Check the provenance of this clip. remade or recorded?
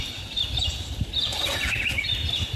recorded